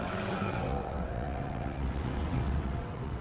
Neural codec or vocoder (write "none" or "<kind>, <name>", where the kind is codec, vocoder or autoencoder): vocoder, WaveNeXt